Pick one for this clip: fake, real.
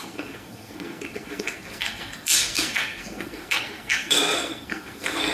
fake